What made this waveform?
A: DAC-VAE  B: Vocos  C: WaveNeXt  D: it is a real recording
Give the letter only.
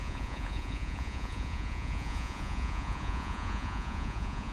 B